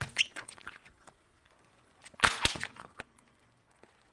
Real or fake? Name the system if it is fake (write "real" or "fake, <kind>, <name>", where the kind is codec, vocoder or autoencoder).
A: fake, vocoder, Vocos